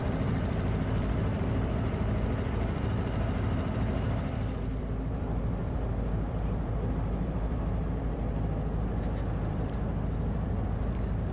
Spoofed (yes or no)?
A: yes